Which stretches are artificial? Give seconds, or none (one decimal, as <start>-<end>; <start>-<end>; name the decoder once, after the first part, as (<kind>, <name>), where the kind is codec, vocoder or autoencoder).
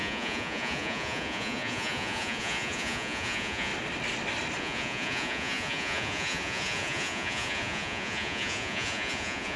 0.0-3.7 (vocoder, Vocos); 4.6-9.6